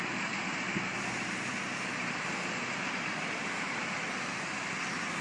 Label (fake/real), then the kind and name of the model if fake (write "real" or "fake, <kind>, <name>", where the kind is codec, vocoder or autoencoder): real